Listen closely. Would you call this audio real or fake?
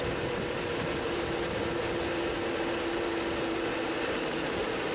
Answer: real